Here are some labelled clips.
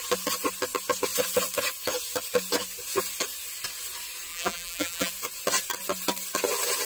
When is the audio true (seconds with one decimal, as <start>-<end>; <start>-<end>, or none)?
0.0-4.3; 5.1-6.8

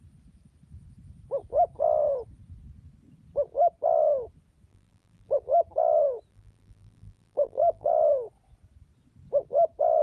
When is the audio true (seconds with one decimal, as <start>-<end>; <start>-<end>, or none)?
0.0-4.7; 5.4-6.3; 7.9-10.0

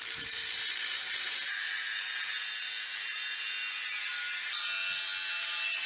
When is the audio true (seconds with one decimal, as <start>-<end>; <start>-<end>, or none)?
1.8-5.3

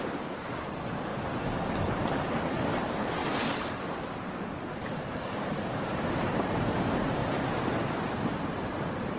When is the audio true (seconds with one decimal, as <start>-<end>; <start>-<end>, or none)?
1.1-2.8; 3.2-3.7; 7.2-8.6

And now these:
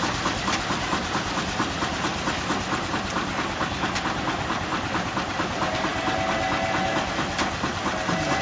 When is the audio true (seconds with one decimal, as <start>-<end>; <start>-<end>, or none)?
0.0-8.4

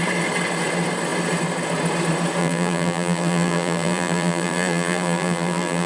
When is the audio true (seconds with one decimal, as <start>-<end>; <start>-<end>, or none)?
0.0-2.4